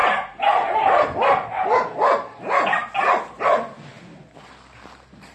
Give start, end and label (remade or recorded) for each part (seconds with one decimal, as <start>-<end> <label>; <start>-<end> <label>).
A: 0.0-5.3 recorded